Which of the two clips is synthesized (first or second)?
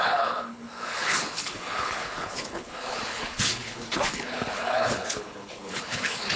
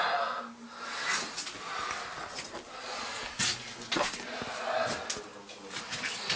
first